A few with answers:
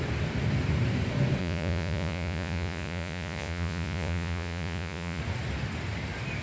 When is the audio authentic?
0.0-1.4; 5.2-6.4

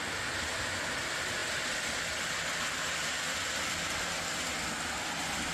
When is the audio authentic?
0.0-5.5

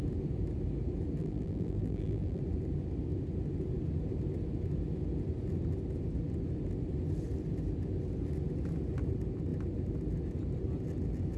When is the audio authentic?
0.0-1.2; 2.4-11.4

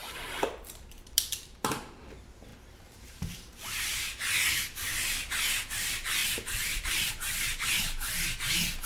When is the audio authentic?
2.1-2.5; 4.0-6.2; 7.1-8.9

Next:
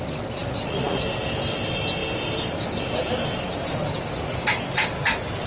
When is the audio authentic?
0.0-0.4; 1.0-5.5